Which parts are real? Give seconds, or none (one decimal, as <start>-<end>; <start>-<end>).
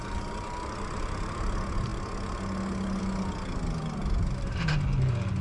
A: 0.0-5.4